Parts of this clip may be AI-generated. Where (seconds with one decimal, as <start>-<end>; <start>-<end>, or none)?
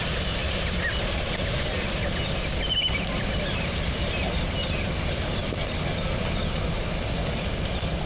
0.4-3.9